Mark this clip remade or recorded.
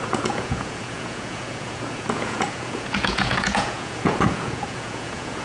remade